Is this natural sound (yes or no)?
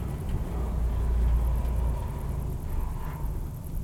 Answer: yes